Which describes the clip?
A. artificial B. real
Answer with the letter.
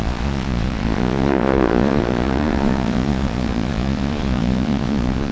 A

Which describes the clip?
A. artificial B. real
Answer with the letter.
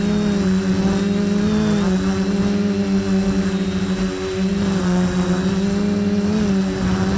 B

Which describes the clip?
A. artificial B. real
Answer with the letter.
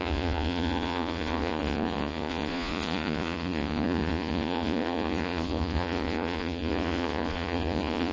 A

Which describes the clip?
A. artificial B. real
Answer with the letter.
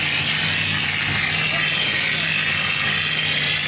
B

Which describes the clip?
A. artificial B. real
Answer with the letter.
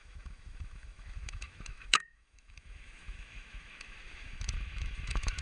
A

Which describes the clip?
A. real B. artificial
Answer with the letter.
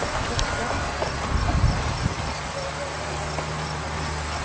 A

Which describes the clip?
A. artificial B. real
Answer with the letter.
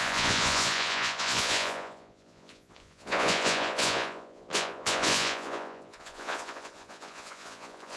A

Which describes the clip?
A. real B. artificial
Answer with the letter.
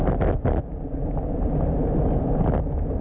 A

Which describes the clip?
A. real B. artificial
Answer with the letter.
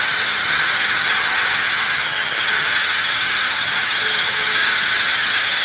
B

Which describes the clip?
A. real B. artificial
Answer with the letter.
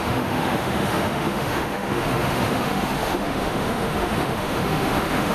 B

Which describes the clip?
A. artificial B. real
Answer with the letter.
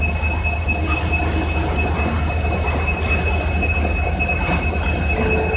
B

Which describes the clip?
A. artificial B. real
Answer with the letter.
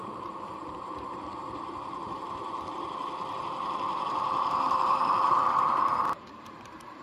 A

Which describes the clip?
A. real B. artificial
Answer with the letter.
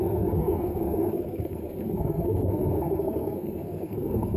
B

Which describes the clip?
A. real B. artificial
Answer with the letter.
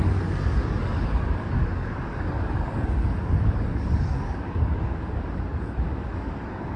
B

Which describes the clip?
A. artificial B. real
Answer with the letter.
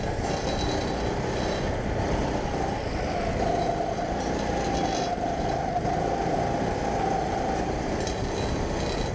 B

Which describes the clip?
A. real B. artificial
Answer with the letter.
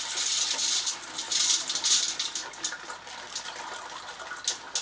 A